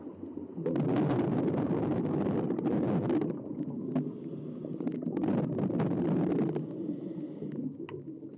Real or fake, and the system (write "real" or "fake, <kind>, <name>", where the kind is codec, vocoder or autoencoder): real